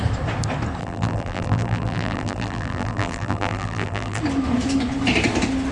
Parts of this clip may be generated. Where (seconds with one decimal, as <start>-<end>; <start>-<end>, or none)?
0.8-4.2